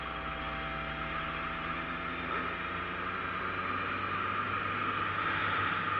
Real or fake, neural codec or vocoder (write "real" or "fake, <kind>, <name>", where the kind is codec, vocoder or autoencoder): real